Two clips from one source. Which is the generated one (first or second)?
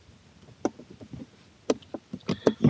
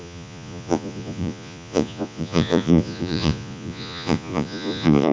second